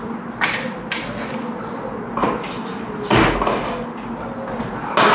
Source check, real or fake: real